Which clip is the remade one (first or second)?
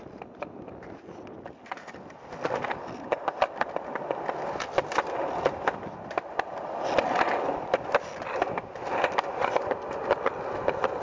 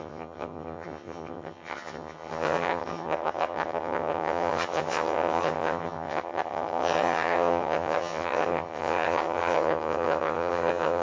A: second